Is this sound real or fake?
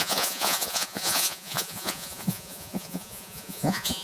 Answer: fake